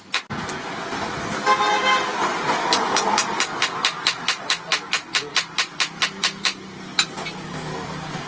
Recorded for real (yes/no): yes